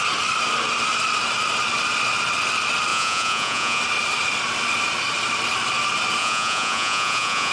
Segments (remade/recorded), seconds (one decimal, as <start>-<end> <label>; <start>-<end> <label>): 0.0-2.9 recorded; 2.9-3.8 remade; 3.8-6.2 recorded; 6.2-7.5 remade